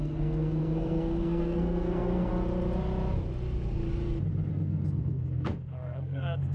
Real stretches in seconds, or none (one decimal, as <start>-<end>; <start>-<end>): 2.3-4.5